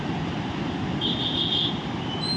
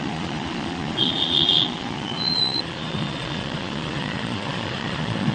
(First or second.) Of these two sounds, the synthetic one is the second